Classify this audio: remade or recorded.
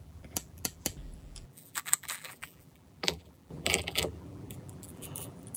remade